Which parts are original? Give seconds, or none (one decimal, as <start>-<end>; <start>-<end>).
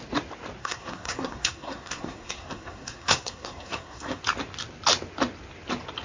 0.0-0.6; 4.2-6.0